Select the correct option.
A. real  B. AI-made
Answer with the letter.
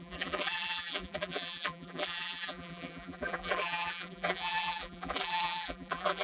B